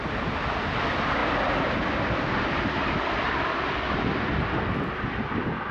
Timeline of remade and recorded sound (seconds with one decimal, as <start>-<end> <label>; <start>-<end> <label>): 0.0-5.7 recorded